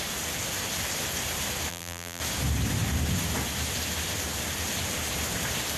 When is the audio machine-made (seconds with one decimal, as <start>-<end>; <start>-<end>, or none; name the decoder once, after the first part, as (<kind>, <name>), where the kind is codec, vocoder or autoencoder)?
1.7-2.2 (vocoder, BigVGAN v2)